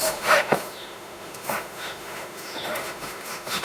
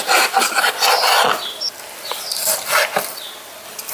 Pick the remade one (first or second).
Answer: first